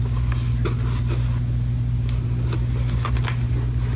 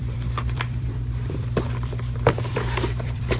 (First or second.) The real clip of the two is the first